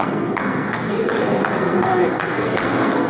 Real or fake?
fake